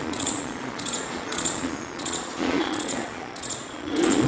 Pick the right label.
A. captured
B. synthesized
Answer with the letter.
B